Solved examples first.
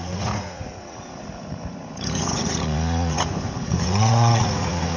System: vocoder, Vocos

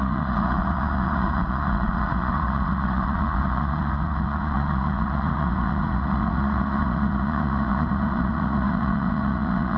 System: vocoder, Vocos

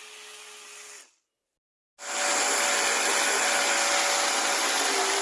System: none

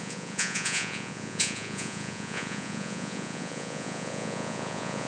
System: vocoder, Vocos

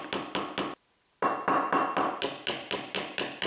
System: none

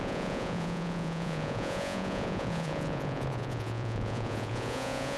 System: vocoder, Vocos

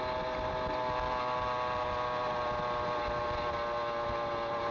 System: none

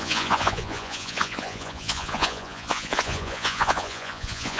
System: vocoder, Vocos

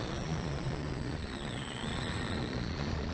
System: vocoder, Vocos